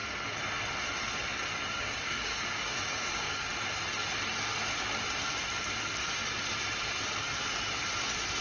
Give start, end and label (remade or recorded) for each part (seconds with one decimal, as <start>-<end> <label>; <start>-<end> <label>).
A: 0.0-1.7 recorded; 1.7-3.5 remade; 3.5-8.4 recorded